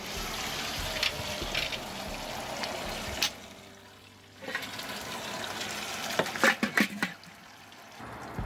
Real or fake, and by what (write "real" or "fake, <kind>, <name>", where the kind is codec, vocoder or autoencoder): real